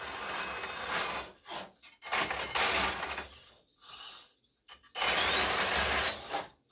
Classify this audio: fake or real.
real